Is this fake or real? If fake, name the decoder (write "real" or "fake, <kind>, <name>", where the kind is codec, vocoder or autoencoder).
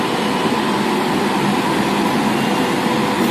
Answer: real